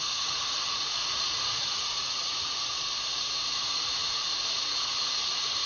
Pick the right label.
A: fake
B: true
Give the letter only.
A